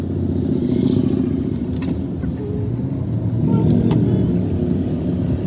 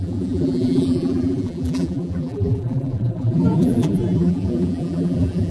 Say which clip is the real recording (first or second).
first